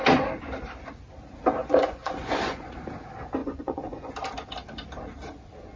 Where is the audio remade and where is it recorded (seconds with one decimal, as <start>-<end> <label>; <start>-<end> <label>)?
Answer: 0.0-1.6 recorded; 1.6-2.7 remade; 2.7-3.4 recorded; 3.4-4.1 remade; 4.1-5.8 recorded